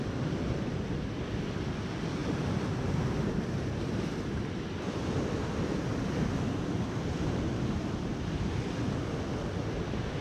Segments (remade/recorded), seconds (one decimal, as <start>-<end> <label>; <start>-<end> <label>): 0.0-2.2 recorded; 2.2-4.4 remade; 4.4-10.2 recorded